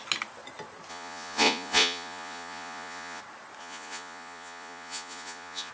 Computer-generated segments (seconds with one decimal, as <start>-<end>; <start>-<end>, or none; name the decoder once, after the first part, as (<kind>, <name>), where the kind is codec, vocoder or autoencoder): 0.9-3.2 (vocoder, Vocos); 3.6-5.7